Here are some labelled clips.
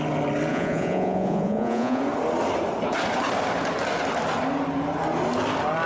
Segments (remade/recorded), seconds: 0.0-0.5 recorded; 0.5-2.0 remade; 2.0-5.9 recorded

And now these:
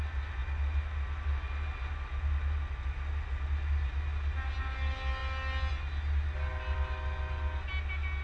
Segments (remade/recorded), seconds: 0.0-8.2 recorded

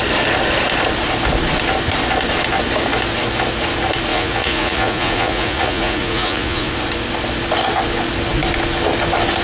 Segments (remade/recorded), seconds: 0.0-4.1 recorded; 4.1-6.7 remade; 6.7-9.4 recorded

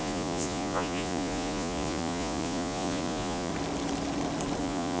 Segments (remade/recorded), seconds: 0.0-3.5 remade; 3.5-4.6 recorded; 4.6-5.0 remade